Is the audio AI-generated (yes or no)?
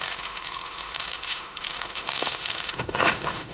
yes